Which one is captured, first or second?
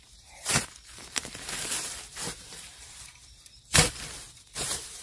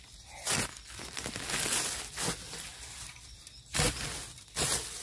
second